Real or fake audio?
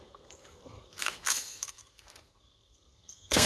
fake